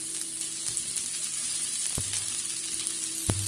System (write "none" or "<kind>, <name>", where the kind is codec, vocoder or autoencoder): none